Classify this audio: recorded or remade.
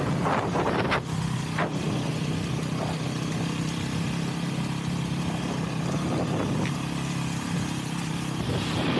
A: recorded